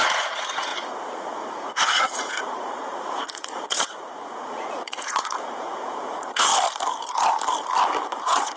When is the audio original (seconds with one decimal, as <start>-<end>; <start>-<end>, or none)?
6.5-8.2